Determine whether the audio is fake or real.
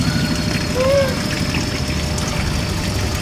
real